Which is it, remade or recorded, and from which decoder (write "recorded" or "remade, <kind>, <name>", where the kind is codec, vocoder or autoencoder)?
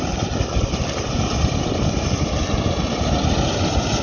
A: recorded